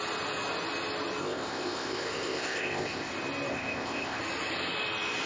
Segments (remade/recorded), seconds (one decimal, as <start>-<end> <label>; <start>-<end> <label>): 0.0-1.2 recorded; 1.2-3.1 remade; 3.1-3.5 recorded; 3.5-4.2 remade; 4.2-5.3 recorded